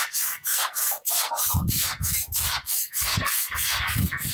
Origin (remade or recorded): remade